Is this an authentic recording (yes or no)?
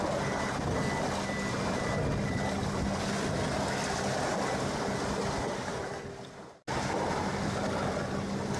yes